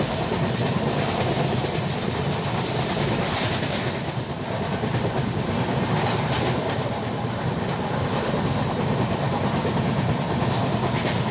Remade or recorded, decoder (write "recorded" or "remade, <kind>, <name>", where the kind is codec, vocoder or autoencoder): remade, vocoder, BigVGAN v2